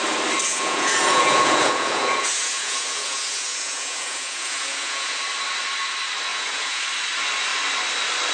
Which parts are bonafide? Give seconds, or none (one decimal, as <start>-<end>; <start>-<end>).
0.0-0.5; 5.2-6.3; 6.8-8.3